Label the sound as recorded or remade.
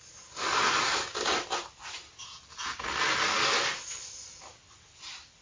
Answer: recorded